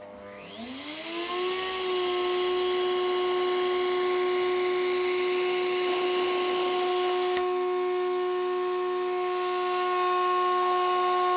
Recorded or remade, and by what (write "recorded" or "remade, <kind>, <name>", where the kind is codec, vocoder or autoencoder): recorded